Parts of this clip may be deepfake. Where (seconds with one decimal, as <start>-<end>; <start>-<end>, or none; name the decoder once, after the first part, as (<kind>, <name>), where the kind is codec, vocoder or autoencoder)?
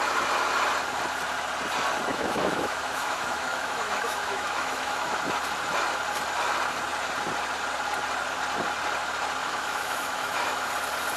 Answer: 2.1-5.1 (autoencoder, DAC-VAE); 9.4-10.7